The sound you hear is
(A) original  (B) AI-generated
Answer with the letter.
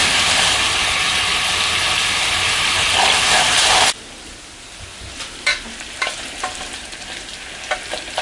A